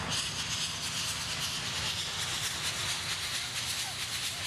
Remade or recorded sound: recorded